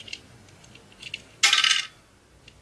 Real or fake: real